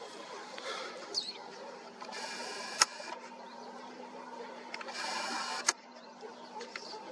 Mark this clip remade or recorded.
remade